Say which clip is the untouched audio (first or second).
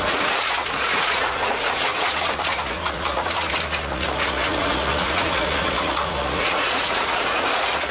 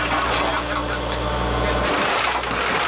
second